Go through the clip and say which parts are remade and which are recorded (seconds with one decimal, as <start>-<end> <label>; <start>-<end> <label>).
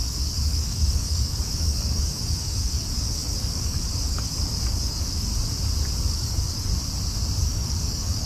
0.0-5.3 remade; 5.3-6.1 recorded; 6.1-6.7 remade; 6.7-7.4 recorded; 7.4-8.3 remade